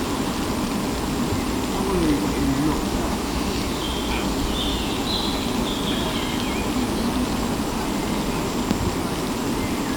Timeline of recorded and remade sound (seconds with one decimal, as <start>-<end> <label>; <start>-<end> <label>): 0.0-2.9 recorded; 2.9-3.4 remade; 3.4-10.0 recorded